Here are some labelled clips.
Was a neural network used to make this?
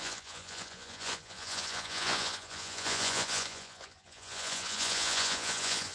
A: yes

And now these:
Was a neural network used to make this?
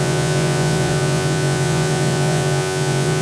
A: yes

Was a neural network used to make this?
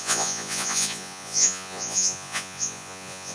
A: yes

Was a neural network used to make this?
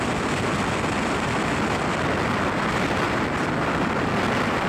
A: no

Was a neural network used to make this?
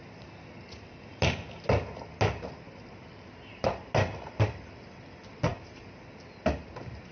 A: no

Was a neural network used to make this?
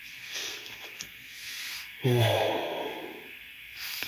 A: yes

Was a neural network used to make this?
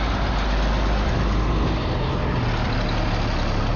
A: no